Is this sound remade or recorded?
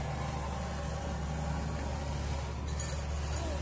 recorded